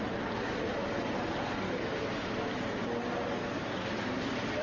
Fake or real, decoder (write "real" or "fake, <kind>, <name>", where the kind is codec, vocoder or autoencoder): real